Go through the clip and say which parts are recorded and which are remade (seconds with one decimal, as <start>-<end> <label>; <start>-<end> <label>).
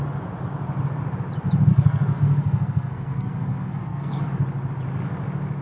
0.0-1.7 recorded; 1.7-4.3 remade; 4.3-5.6 recorded